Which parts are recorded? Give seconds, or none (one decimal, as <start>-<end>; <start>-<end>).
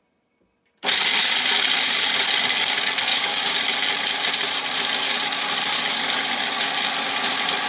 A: 0.0-3.1; 3.6-7.7